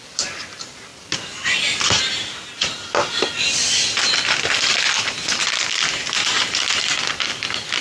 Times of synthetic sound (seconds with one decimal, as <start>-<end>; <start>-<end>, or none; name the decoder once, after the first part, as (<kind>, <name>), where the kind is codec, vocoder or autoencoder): none